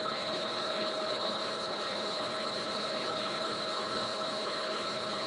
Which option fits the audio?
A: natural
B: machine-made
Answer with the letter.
B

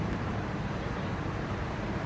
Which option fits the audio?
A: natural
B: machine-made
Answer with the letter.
B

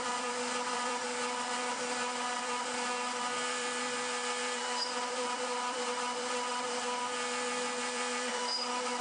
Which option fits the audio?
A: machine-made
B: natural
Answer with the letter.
A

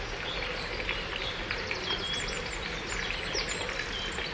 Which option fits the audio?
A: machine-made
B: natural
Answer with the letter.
B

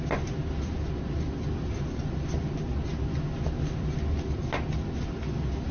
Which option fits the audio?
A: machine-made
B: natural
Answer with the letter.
B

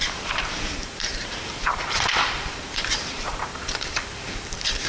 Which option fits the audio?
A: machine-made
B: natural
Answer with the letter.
A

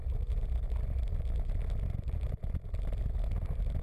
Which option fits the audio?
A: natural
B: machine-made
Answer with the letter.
A